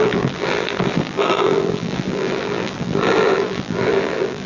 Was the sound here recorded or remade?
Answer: remade